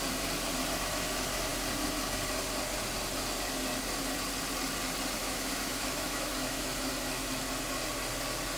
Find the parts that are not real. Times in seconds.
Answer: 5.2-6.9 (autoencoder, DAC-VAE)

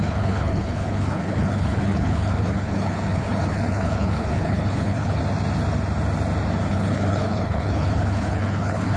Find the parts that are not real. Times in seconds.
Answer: 0.0-5.2 (codec, HILCodec); 6.7-9.0

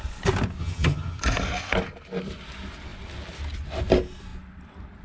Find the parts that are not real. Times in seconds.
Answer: 0.6-1.2 (vocoder, HiFi-GAN)

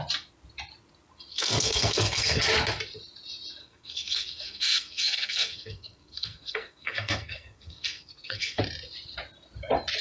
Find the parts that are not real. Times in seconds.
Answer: 1.3-2.4 (codec, SNAC); 3.6-8.6

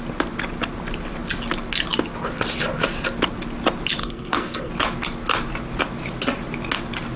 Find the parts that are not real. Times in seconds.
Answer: 4.0-4.7 (codec, SNAC)

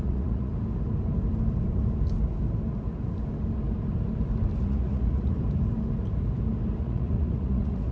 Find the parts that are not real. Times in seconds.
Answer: 0.0-0.5 (vocoder, Vocos); 4.6-5.4; 6.8-7.9